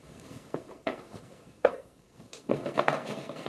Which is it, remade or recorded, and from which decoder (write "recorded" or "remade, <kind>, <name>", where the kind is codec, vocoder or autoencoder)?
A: remade, codec, SNAC